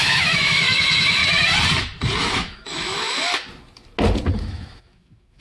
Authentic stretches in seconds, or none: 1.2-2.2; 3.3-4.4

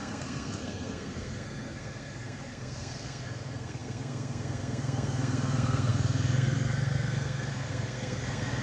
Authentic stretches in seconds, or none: none

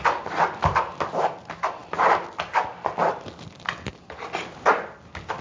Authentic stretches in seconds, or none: 0.0-5.4

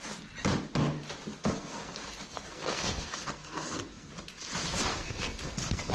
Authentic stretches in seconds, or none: 0.0-1.3; 4.1-4.9

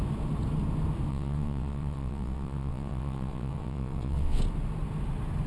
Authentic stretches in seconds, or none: 0.0-1.1; 4.4-5.5

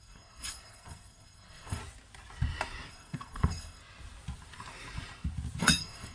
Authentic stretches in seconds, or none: 1.8-2.9; 3.8-5.6

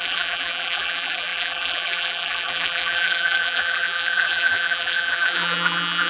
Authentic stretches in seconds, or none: none

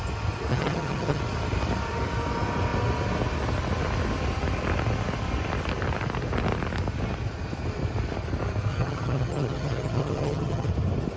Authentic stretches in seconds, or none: 0.0-0.5; 1.2-8.7; 10.7-11.2